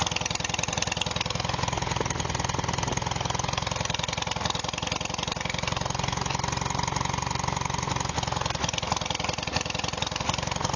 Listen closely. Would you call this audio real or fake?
real